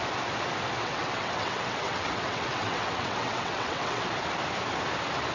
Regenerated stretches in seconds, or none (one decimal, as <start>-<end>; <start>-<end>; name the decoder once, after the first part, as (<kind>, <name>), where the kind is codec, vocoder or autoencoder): 0.8-4.0 (vocoder, WaveNeXt)